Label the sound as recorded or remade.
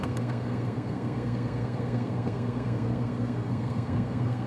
remade